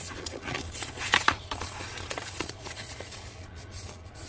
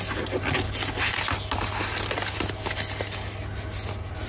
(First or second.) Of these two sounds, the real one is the second